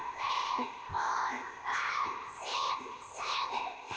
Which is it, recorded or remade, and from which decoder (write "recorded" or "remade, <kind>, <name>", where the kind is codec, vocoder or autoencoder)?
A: remade, codec, ZipCodec